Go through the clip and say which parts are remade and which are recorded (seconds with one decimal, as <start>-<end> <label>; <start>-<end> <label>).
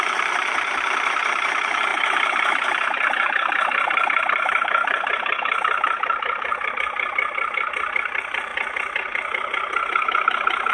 0.0-8.5 remade; 8.5-10.7 recorded